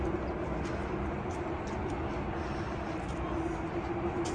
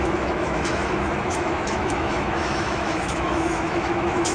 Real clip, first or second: first